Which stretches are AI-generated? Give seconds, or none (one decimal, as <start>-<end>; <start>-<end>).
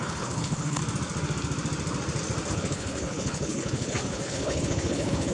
0.0-0.8; 2.5-5.3